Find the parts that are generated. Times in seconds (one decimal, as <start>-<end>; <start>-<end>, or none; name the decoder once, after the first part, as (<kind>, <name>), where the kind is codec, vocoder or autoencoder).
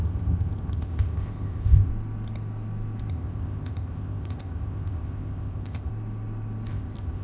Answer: 0.0-1.9 (codec, ZipCodec); 3.1-5.9; 6.7-7.2